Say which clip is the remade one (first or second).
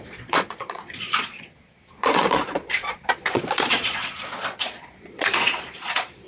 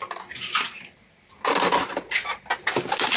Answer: first